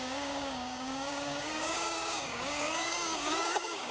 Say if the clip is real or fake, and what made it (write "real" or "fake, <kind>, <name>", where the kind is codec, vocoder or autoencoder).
fake, codec, DAC